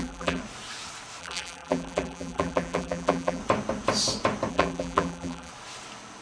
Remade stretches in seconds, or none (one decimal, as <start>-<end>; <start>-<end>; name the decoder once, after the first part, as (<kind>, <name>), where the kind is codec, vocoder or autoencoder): 0.0-0.4 (vocoder, BigVGAN v2); 1.2-3.4; 4.5-5.5

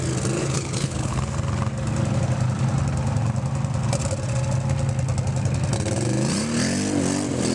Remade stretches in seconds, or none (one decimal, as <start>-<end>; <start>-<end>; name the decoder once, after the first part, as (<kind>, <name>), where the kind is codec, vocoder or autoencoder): 0.4-1.2 (codec, HILCodec)

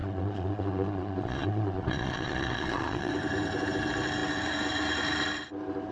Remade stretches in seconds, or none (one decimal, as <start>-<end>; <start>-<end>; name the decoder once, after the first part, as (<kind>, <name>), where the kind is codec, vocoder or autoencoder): 0.0-3.1 (vocoder, Vocos)

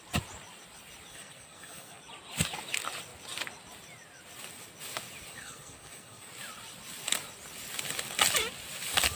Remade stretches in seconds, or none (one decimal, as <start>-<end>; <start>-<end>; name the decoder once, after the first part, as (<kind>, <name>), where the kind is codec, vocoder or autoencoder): 1.1-2.0 (codec, SNAC); 5.3-6.3

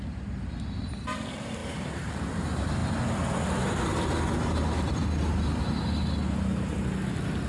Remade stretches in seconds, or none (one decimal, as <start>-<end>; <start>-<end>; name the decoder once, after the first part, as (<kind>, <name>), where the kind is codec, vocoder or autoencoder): 0.0-2.8 (vocoder, BigVGAN v2)

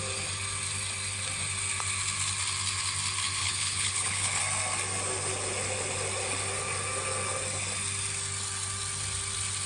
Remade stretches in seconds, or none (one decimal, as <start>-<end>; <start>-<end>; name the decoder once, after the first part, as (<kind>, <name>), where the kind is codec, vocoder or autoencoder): 3.4-4.4 (codec, HILCodec)